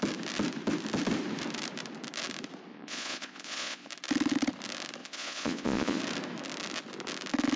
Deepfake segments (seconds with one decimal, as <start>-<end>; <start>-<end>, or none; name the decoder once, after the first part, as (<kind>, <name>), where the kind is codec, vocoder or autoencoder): 2.7-3.9 (vocoder, Vocos); 5.0-6.0